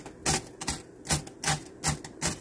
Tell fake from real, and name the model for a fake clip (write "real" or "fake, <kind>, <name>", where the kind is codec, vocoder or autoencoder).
real